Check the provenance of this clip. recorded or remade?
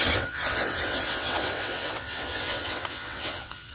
remade